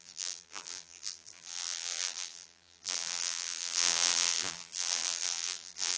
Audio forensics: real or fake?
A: fake